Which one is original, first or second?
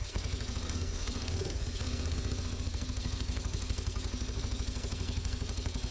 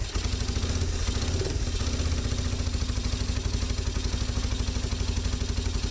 second